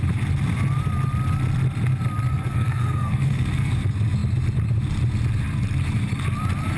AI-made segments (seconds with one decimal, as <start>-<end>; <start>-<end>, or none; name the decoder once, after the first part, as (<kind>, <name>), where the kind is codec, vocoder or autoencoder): 2.3-3.7 (codec, SNAC)